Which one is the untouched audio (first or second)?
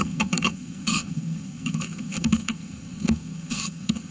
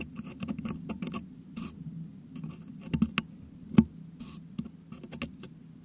second